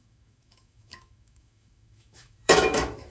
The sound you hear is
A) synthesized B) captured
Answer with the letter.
A